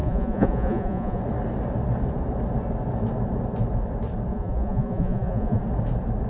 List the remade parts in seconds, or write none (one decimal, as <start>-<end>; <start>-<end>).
0.0-1.2; 4.3-5.6

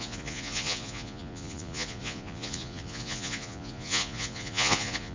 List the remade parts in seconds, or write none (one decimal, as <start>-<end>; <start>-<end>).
0.0-5.1

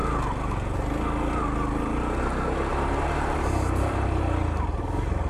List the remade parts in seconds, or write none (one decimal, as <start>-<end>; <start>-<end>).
2.7-4.2